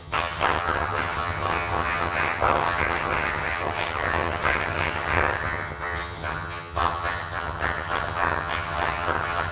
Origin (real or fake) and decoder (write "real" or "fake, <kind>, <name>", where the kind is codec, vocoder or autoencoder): fake, vocoder, HiFi-GAN